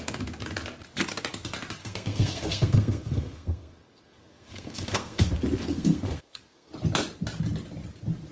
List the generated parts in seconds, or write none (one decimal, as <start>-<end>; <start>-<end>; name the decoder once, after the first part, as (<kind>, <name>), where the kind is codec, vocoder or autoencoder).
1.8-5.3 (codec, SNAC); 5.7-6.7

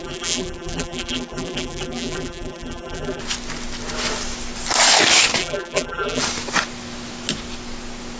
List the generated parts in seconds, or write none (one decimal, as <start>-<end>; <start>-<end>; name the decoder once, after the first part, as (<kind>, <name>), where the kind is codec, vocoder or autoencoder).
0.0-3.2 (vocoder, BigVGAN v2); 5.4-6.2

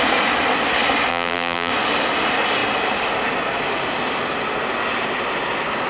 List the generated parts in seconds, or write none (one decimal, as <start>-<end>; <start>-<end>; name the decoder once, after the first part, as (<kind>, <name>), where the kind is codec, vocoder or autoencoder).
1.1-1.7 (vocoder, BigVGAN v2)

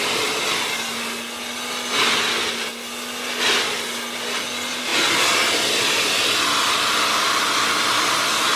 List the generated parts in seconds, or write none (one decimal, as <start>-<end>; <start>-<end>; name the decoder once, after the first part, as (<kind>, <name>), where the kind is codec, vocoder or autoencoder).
none